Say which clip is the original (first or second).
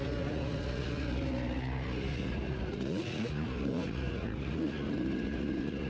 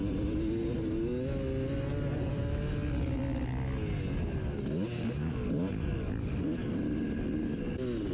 second